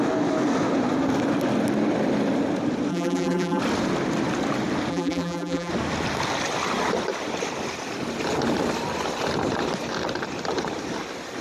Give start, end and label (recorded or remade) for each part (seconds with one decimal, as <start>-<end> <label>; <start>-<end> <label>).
0.0-2.9 recorded; 2.9-3.6 remade; 3.6-4.9 recorded; 4.9-5.7 remade; 5.7-11.4 recorded